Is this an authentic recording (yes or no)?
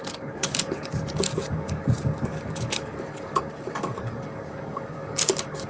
no